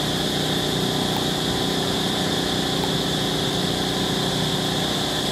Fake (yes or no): no